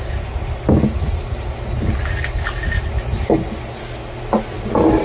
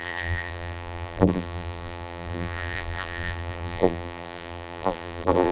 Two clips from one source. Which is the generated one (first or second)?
second